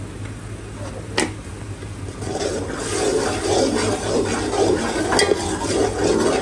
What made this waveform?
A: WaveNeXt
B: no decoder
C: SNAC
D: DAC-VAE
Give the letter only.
B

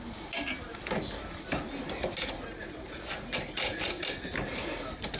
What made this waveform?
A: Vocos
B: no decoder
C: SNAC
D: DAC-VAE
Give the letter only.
B